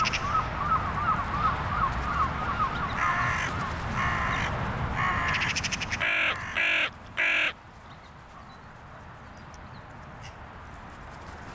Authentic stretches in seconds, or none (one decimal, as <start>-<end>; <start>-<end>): 0.0-11.5